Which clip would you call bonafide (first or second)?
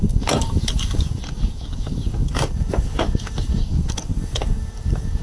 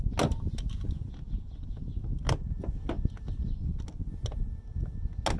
second